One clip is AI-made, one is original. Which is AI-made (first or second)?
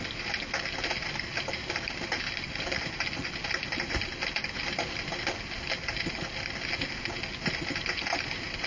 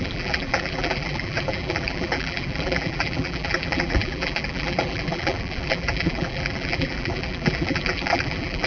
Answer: second